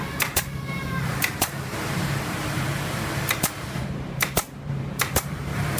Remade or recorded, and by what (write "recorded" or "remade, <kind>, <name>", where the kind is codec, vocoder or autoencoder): remade, vocoder, BigVGAN v2